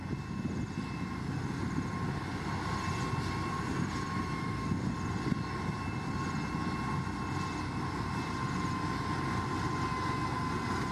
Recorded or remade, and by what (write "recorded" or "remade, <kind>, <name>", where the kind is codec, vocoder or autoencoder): recorded